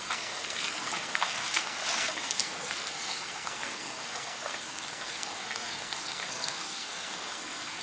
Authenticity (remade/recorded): remade